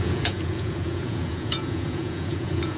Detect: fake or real fake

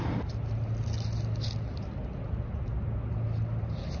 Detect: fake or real real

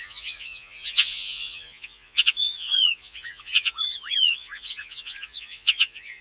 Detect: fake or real fake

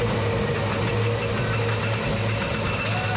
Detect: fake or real real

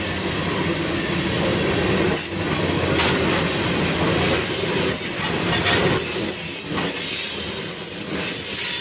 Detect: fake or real real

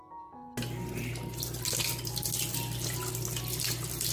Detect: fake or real real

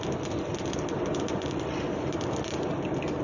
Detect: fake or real real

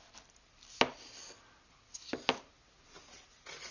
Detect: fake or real real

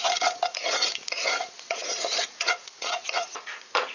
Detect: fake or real fake